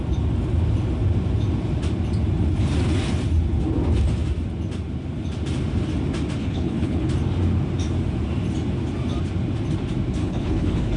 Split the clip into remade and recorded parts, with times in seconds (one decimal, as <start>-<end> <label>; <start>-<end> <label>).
0.0-6.4 recorded; 6.4-7.1 remade; 7.1-10.2 recorded; 10.2-11.0 remade